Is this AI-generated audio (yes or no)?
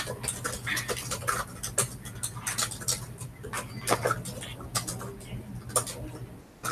no